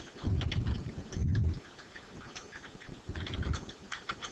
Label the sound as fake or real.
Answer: real